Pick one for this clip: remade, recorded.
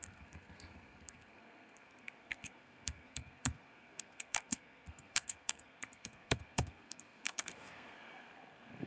remade